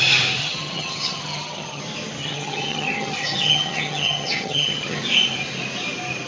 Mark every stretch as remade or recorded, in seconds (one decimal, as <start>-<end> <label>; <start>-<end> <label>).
0.0-0.4 recorded; 0.4-1.8 remade; 1.8-2.2 recorded; 2.2-5.0 remade; 5.0-6.3 recorded